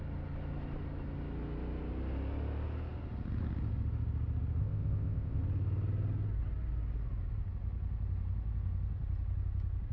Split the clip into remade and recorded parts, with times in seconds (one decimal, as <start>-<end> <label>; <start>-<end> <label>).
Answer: 0.0-4.6 recorded; 4.6-5.4 remade; 5.4-9.9 recorded